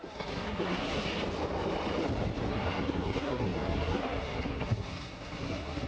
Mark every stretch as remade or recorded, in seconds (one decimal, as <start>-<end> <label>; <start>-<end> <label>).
0.0-1.1 remade; 1.1-2.5 recorded; 2.5-5.9 remade